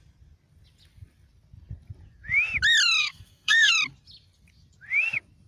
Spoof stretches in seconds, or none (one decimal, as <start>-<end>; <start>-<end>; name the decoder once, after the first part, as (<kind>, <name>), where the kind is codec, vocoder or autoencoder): 3.0-3.7 (codec, SNAC)